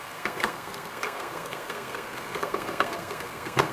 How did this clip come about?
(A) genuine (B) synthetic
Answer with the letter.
B